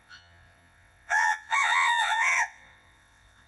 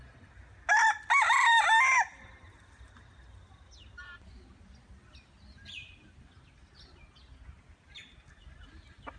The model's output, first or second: first